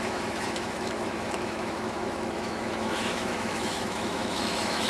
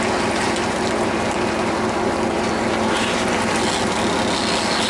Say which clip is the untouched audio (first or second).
second